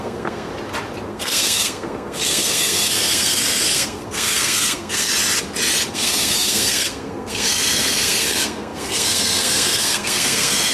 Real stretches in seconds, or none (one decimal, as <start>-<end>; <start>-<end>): 0.5-1.1; 5.1-5.9